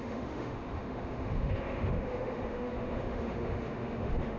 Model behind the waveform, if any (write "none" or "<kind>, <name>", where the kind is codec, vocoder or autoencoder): autoencoder, DAC-VAE